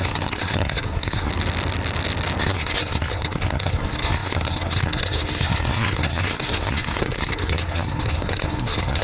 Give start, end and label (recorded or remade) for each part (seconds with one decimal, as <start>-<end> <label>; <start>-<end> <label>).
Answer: 0.0-1.3 remade; 1.3-2.4 recorded; 2.4-9.0 remade